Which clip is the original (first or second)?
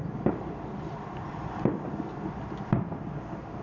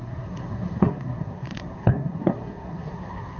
first